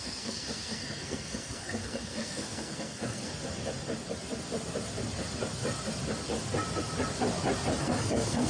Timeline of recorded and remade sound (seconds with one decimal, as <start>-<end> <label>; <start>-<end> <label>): 0.0-3.3 remade; 3.3-7.8 recorded; 7.8-8.5 remade